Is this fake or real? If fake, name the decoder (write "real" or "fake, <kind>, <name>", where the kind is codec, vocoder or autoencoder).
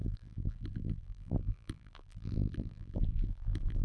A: fake, vocoder, BigVGAN v2